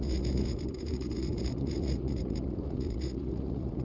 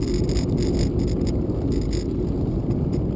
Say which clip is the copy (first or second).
first